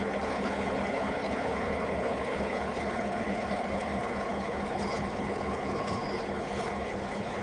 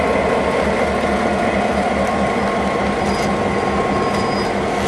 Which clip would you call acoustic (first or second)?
second